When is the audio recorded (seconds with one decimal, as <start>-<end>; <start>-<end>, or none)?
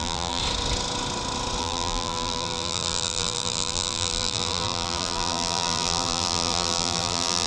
0.4-1.6